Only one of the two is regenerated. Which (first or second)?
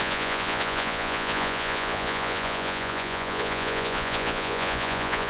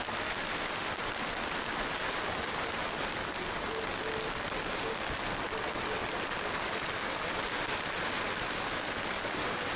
first